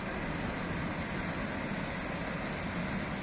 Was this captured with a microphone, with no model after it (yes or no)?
yes